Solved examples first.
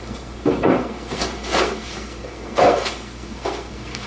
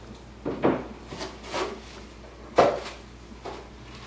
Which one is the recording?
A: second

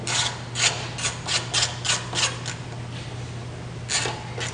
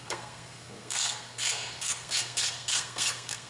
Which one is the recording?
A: first